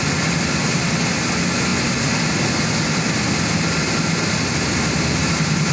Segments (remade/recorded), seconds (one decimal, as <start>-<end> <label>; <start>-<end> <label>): 0.0-5.7 recorded